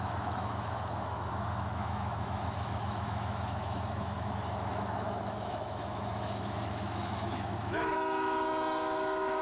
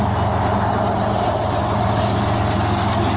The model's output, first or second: first